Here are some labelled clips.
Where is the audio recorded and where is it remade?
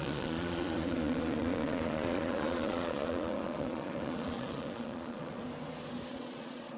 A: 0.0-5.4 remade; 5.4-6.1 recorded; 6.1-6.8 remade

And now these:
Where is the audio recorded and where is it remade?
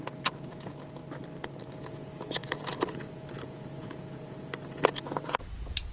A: 0.0-1.0 remade; 1.0-1.8 recorded; 1.8-5.9 remade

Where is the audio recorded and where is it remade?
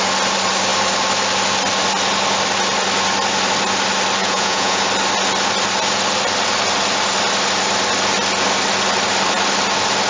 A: 0.0-4.2 recorded; 4.2-4.8 remade; 4.8-10.1 recorded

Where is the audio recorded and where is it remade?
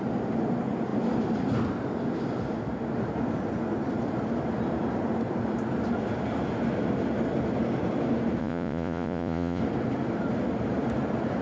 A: 0.0-8.4 recorded; 8.4-9.6 remade; 9.6-11.4 recorded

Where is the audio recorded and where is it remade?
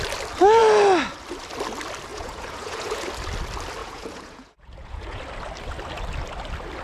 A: 0.0-2.1 recorded; 2.1-3.0 remade; 3.0-3.8 recorded; 3.8-5.2 remade; 5.2-6.8 recorded